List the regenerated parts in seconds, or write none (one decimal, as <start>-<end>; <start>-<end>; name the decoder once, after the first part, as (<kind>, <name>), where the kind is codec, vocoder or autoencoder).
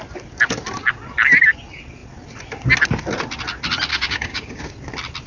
3.9-4.6 (codec, DAC)